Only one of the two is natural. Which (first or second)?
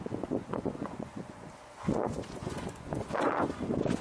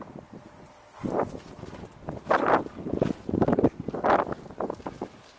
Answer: second